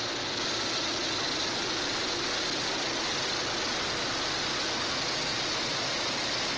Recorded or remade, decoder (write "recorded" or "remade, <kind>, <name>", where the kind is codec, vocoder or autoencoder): recorded